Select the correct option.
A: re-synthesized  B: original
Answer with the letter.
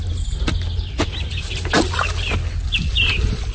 B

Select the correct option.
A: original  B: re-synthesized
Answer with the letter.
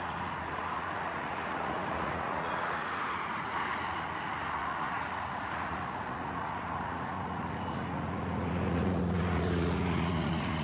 B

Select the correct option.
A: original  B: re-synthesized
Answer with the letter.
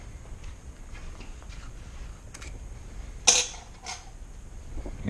A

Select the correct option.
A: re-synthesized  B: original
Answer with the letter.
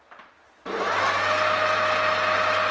B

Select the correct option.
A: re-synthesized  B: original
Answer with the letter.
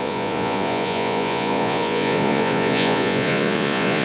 A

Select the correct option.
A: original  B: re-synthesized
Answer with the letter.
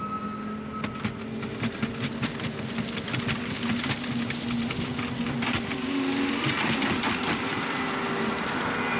A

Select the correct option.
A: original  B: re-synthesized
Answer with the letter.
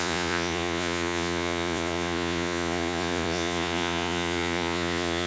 B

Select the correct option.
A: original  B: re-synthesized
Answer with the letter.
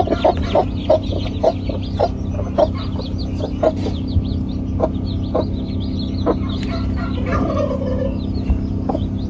A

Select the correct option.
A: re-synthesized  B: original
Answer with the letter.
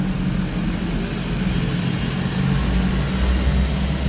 B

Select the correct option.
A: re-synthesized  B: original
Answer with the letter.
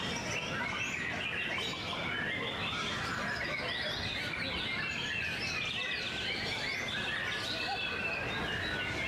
B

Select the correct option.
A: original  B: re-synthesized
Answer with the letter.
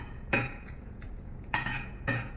B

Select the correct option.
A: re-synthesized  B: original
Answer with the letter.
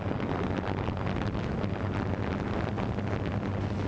B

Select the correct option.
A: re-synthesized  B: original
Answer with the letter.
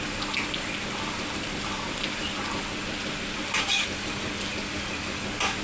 B